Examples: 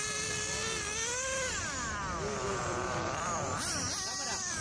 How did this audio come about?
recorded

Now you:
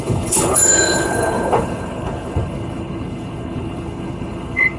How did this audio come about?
remade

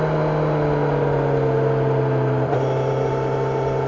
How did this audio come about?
recorded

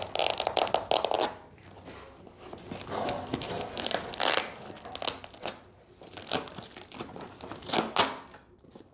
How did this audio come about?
recorded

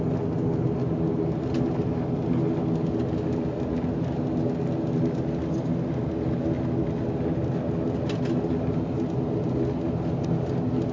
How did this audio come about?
recorded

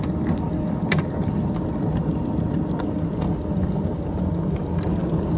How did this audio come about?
recorded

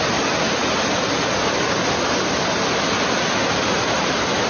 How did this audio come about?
recorded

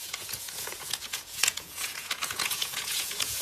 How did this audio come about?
remade